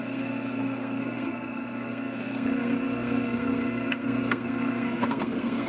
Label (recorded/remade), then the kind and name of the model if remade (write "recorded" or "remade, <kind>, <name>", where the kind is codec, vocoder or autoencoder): remade, codec, SNAC